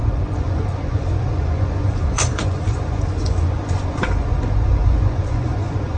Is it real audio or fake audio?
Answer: fake